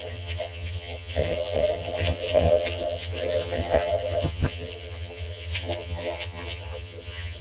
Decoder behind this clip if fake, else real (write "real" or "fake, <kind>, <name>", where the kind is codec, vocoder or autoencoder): fake, vocoder, HiFi-GAN